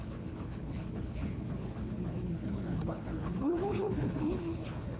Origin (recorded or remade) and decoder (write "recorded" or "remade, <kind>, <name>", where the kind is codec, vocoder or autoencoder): remade, codec, HILCodec